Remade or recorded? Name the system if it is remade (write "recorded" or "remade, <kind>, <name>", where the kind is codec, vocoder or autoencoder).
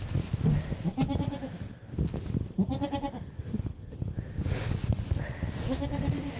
recorded